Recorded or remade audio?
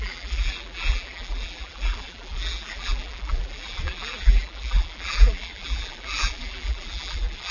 remade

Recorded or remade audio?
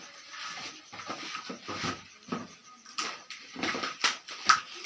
remade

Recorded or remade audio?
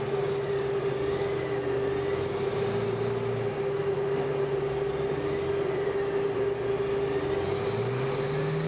recorded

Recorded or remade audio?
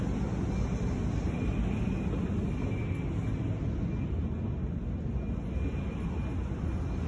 recorded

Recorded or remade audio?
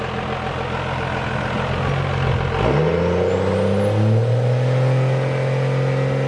recorded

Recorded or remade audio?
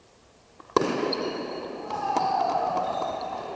remade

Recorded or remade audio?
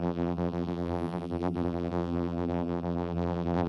remade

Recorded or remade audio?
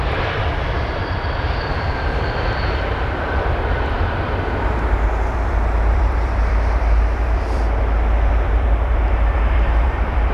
remade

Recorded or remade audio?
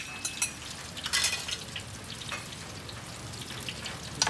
recorded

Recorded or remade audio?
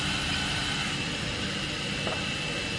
recorded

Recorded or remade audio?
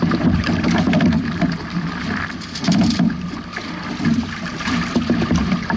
remade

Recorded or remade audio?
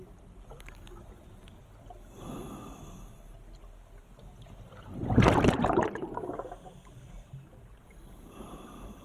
recorded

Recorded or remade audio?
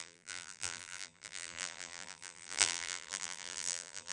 remade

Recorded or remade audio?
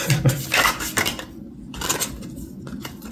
remade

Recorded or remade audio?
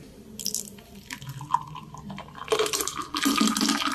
recorded